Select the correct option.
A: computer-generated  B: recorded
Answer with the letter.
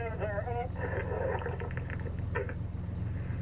B